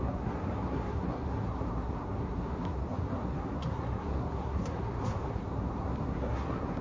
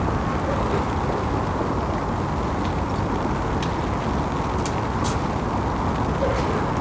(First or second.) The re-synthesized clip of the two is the first